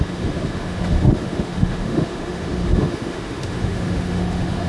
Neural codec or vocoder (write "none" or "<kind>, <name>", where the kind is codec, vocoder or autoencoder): autoencoder, DAC-VAE